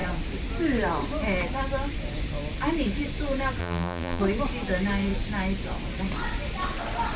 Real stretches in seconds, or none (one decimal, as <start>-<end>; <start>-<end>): 0.0-3.6; 4.2-7.2